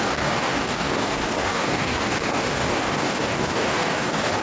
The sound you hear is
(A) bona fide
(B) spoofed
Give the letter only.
B